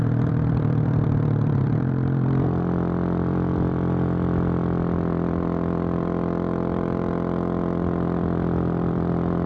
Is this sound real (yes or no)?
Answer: no